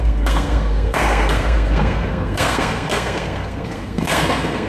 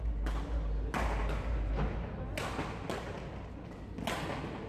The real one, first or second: second